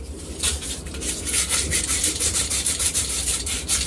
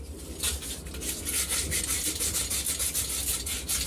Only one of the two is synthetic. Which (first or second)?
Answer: first